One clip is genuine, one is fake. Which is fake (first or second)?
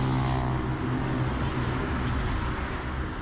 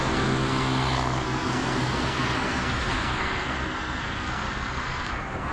second